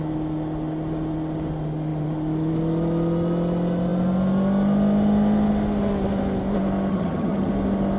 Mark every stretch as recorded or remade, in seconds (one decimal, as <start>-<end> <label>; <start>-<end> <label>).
0.0-6.9 recorded; 6.9-7.5 remade; 7.5-8.0 recorded

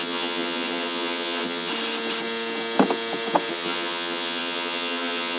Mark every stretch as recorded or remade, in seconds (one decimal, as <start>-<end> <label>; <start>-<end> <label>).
0.0-1.7 remade; 1.7-3.5 recorded; 3.5-5.4 remade

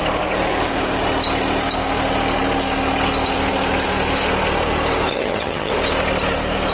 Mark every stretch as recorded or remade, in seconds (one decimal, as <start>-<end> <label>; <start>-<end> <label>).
0.0-5.1 recorded; 5.1-5.7 remade; 5.7-6.7 recorded

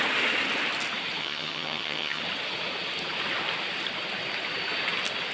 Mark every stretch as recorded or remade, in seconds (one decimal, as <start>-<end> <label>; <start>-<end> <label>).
0.0-1.2 recorded; 1.2-2.2 remade; 2.2-5.3 recorded

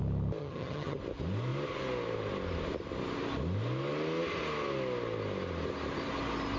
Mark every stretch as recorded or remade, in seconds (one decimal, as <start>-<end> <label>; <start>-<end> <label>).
0.0-0.4 recorded; 0.4-1.0 remade; 1.0-6.6 recorded

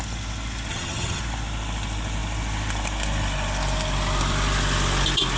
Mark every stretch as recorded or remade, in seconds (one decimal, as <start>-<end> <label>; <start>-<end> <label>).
0.0-0.7 recorded; 0.7-1.2 remade; 1.2-5.4 recorded